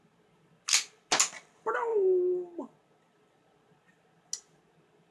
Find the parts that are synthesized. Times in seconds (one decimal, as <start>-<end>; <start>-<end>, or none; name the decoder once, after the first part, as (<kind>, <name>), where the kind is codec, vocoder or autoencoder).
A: none